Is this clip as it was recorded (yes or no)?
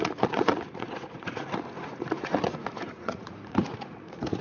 no